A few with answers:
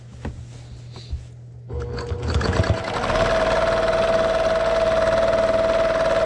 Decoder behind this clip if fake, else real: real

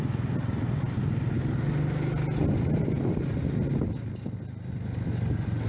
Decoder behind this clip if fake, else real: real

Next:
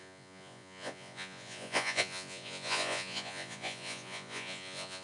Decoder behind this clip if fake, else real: fake, vocoder, Vocos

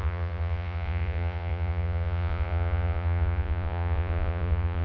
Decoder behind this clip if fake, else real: fake, vocoder, Vocos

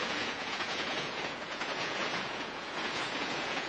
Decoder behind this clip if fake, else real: fake, vocoder, Vocos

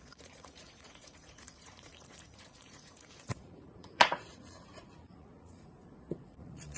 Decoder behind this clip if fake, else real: fake, vocoder, Vocos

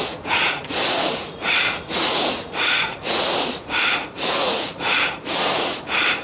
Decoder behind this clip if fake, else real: fake, vocoder, Vocos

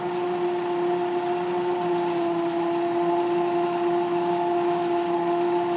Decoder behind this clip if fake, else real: real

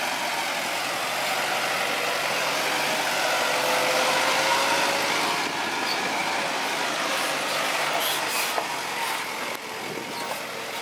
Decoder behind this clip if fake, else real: real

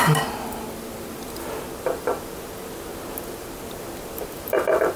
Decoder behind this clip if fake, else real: real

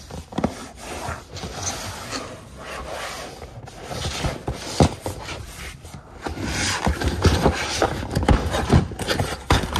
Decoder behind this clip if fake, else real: real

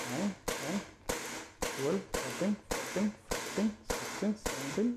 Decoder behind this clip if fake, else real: real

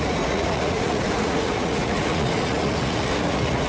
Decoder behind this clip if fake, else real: fake, vocoder, Vocos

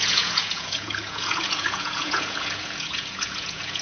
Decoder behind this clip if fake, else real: fake, vocoder, Vocos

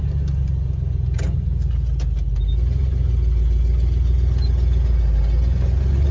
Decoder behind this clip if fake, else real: real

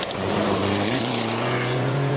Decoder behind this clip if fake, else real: fake, vocoder, Vocos